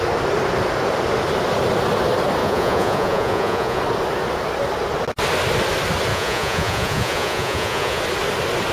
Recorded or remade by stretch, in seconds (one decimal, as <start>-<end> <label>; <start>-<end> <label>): 0.0-2.4 recorded; 2.4-3.8 remade; 3.8-6.1 recorded; 6.1-8.0 remade; 8.0-8.7 recorded